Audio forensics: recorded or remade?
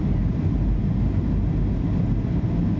recorded